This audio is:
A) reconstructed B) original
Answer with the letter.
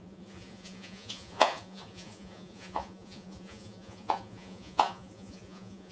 A